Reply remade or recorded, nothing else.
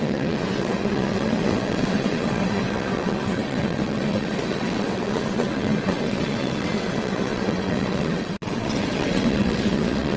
remade